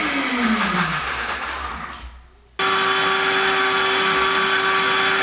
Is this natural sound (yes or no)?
yes